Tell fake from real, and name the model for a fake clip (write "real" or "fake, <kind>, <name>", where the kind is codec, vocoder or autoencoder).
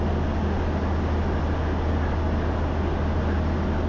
real